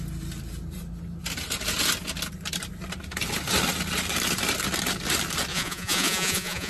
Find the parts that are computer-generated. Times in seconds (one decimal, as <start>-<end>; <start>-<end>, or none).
5.5-6.7